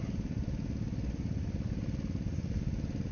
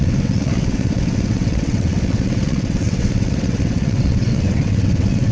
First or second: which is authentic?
first